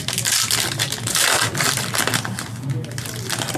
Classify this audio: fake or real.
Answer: real